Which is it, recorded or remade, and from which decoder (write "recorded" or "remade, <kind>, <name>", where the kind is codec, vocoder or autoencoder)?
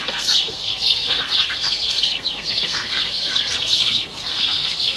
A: remade, codec, SNAC